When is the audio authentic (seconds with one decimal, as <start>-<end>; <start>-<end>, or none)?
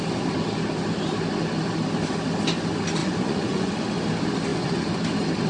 0.0-3.0; 3.7-4.5; 5.0-5.5